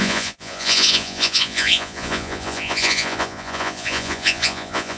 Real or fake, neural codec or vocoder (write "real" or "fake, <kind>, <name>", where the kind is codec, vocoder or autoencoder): fake, vocoder, Vocos